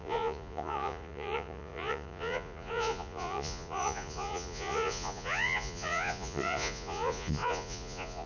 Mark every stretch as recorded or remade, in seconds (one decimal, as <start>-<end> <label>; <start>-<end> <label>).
0.0-8.3 remade